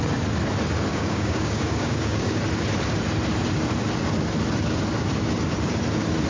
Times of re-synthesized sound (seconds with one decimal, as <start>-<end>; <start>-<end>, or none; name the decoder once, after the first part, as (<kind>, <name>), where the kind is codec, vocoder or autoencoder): 0.9-2.4 (codec, DAC)